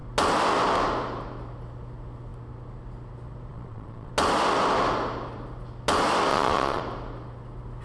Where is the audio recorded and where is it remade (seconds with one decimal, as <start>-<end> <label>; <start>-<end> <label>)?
0.0-3.5 recorded; 3.5-4.1 remade; 4.1-6.3 recorded; 6.3-6.8 remade; 6.8-7.8 recorded